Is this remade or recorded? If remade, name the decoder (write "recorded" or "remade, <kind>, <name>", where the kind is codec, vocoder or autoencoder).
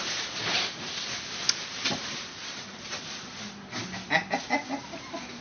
recorded